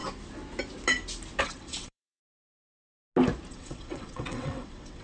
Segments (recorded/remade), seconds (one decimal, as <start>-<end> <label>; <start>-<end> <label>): 0.0-1.4 recorded; 1.4-2.2 remade; 2.2-3.5 recorded; 3.5-5.0 remade